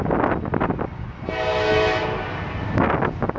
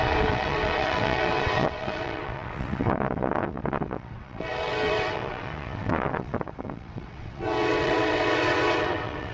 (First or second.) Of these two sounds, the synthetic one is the second